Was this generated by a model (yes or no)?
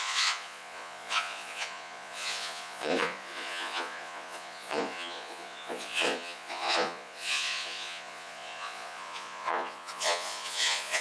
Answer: yes